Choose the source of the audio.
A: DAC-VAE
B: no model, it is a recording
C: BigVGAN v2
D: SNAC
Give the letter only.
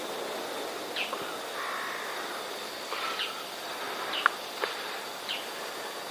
C